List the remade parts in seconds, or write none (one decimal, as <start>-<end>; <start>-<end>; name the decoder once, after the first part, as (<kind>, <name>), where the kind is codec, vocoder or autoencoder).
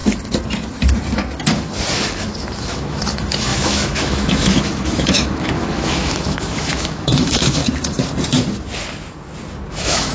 2.6-7.6 (autoencoder, DAC-VAE); 9.7-10.1